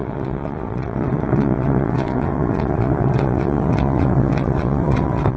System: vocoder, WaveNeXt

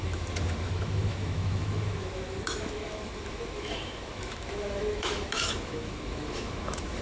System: autoencoder, DAC-VAE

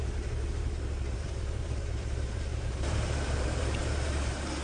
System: vocoder, BigVGAN v2